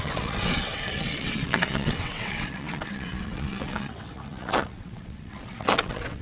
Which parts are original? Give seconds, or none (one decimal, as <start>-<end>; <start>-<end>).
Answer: none